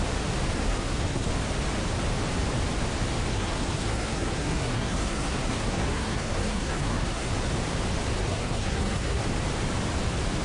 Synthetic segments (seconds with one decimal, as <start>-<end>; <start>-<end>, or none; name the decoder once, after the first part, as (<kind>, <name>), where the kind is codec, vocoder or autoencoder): 0.6-1.3 (codec, SNAC); 3.3-7.3; 8.2-9.2